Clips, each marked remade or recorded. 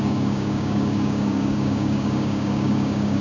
remade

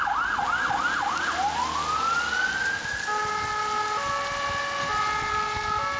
recorded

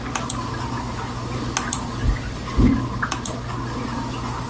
recorded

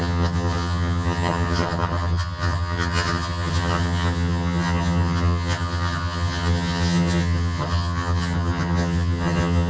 remade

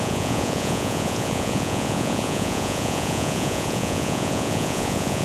remade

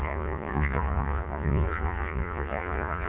remade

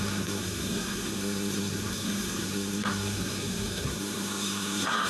remade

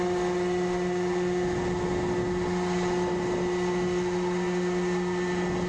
recorded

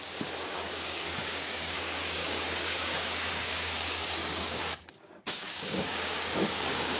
remade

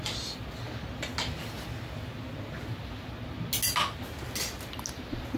recorded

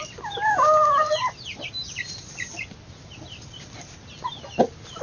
recorded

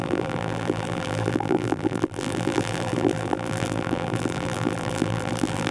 remade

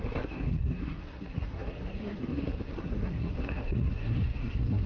remade